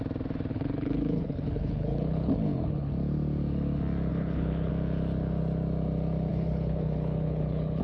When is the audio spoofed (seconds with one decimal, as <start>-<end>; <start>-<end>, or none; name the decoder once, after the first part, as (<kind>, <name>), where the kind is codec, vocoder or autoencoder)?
0.5-2.9 (codec, HILCodec); 4.1-4.7; 6.3-7.8